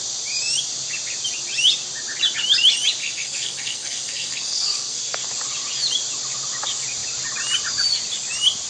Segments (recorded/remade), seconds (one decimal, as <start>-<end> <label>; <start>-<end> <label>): 0.0-3.0 recorded; 3.0-5.3 remade; 5.3-8.7 recorded